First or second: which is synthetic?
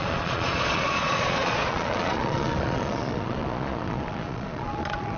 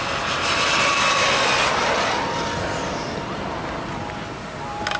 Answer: first